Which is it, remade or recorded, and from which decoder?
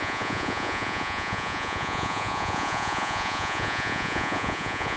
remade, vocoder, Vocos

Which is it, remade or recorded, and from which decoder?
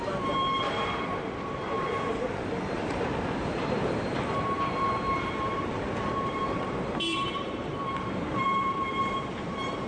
remade, vocoder, BigVGAN v2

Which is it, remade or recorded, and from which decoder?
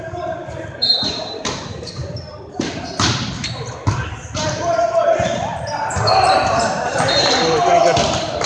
remade, vocoder, BigVGAN v2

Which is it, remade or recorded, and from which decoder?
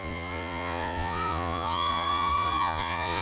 remade, vocoder, Vocos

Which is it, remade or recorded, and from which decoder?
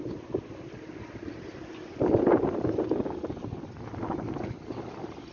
recorded